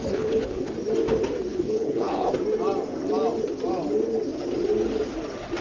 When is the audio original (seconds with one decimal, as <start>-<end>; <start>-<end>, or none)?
0.7-1.5; 2.3-5.6